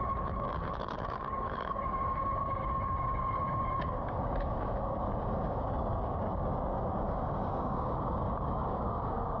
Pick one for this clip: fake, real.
fake